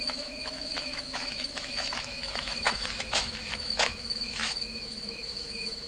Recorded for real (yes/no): no